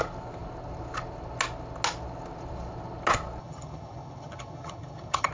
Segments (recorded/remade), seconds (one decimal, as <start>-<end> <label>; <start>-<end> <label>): 0.0-3.4 recorded; 3.4-5.3 remade